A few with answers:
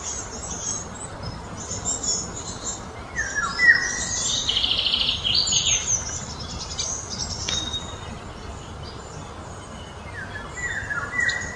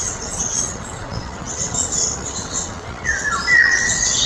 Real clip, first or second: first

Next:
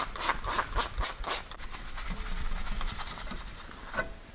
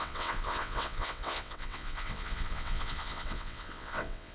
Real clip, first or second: first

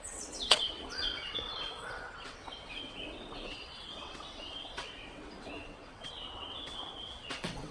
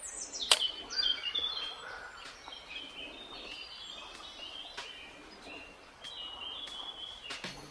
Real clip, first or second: second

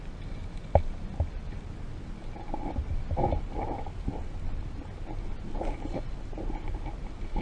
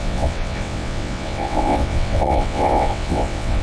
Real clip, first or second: first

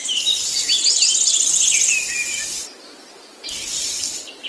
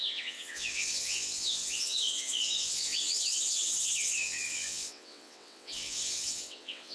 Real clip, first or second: first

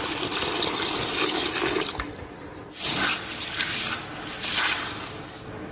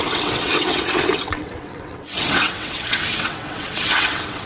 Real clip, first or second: first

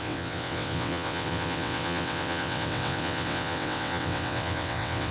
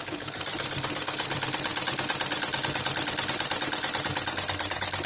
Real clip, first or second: second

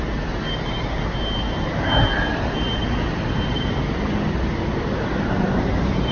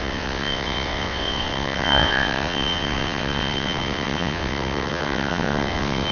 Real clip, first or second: first